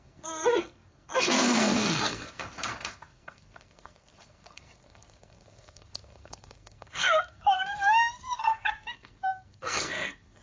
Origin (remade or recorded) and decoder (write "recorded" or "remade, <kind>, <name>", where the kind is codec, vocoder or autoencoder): remade, codec, SNAC